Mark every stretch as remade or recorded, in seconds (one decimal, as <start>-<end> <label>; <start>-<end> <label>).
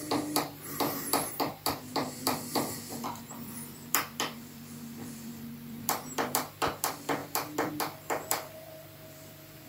0.0-9.7 remade